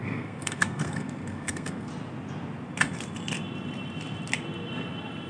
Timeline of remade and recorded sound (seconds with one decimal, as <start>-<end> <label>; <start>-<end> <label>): 0.0-1.9 remade; 1.9-5.3 recorded